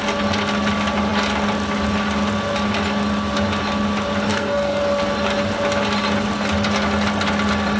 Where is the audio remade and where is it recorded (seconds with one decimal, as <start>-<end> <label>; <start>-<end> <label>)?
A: 0.0-4.3 recorded; 4.3-4.8 remade; 4.8-7.8 recorded